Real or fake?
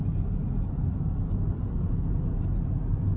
real